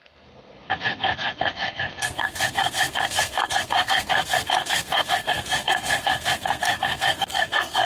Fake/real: fake